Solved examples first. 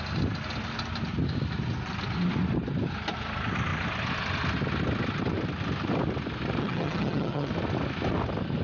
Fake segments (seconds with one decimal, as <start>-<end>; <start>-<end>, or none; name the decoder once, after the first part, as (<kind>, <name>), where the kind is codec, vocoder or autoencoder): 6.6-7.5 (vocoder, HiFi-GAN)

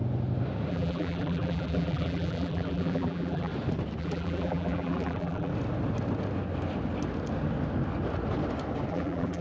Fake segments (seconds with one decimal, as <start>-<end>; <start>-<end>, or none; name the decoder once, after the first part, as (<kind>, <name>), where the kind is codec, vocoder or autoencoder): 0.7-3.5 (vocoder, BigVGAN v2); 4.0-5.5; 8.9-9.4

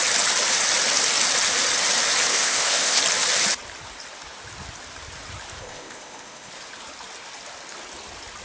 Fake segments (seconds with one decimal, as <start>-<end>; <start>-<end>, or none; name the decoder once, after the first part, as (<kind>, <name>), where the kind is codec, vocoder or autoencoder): 2.3-3.0 (codec, ZipCodec); 5.6-6.5

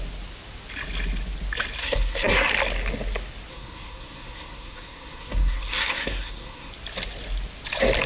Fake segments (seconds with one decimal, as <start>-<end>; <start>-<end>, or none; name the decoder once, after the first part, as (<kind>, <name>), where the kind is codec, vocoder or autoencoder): 1.8-2.5 (codec, SNAC); 3.5-6.7